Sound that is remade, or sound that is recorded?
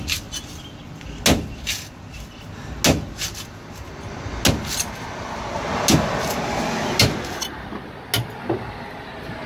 recorded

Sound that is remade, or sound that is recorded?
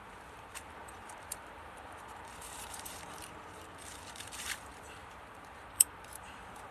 remade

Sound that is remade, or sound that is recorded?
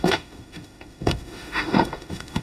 remade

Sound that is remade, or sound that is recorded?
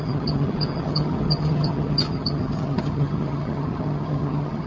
remade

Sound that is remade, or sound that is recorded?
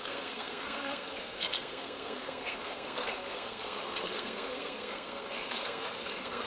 remade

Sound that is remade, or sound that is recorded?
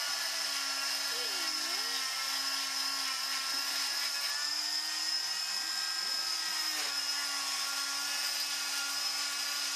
recorded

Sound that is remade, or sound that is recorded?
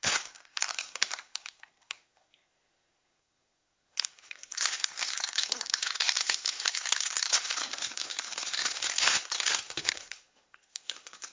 remade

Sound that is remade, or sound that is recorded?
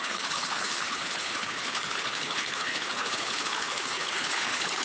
remade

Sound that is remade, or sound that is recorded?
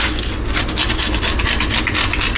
recorded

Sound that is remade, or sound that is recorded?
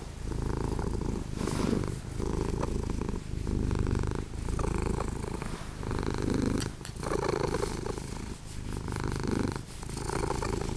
recorded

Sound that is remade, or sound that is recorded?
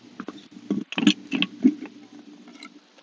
recorded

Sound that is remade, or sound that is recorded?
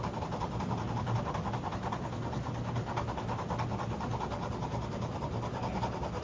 recorded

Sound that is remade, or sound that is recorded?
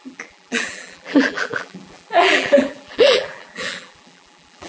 remade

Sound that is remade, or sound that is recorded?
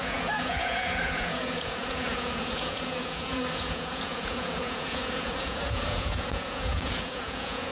remade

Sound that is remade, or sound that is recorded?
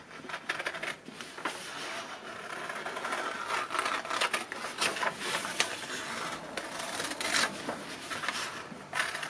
recorded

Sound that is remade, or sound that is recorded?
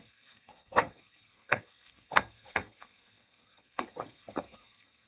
remade